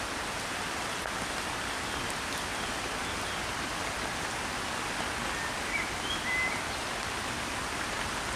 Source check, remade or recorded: recorded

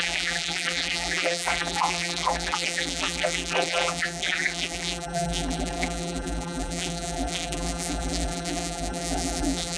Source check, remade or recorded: remade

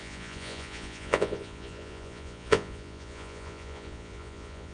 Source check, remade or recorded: remade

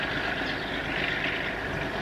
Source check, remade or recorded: recorded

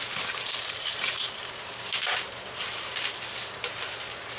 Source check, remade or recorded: remade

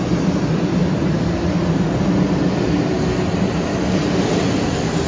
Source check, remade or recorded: recorded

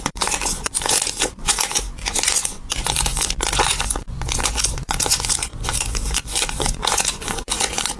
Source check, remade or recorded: remade